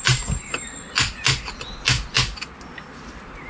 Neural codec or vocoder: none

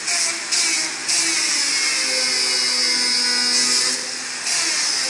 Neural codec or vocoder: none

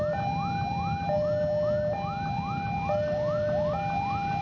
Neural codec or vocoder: none